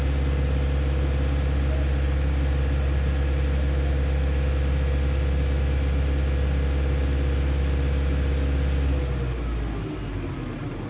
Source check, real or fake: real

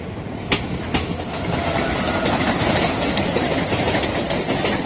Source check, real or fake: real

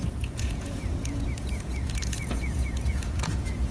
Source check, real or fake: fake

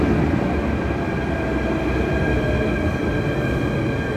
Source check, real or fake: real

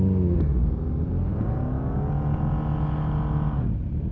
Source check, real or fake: real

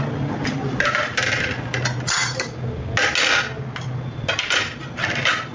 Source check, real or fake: real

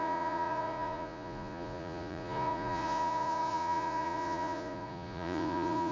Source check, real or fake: fake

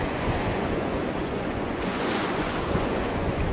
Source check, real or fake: fake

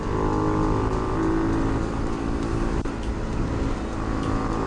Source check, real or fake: real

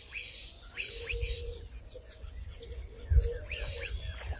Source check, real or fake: fake